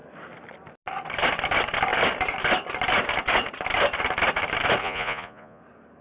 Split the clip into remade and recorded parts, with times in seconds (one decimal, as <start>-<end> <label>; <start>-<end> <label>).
0.0-4.8 recorded; 4.8-5.6 remade; 5.6-6.0 recorded